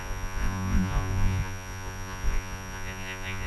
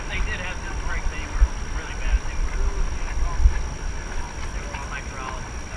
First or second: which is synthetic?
first